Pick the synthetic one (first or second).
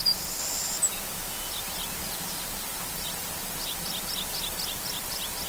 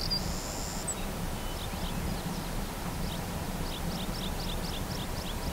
first